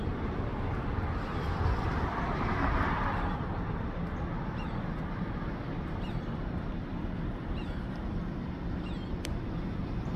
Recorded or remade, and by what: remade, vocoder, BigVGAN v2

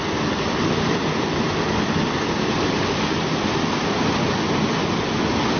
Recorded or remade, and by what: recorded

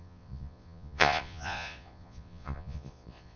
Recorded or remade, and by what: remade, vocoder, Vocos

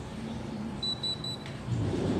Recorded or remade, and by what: remade, vocoder, BigVGAN v2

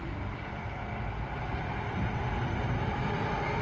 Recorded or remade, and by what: recorded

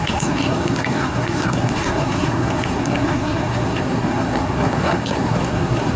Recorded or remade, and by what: remade, codec, SNAC